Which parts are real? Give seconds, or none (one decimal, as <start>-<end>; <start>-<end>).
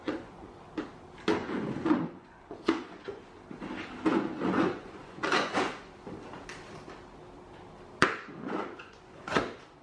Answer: 0.6-1.4; 3.3-4.1; 5.9-8.0; 9.4-9.8